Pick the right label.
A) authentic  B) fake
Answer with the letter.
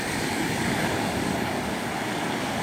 B